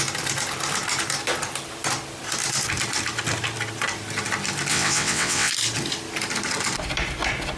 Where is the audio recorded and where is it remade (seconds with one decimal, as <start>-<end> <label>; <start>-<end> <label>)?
0.0-4.7 recorded; 4.7-5.5 remade; 5.5-7.6 recorded